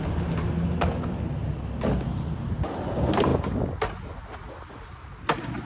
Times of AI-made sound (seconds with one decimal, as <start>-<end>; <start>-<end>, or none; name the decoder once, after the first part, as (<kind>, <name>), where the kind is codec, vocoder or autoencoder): none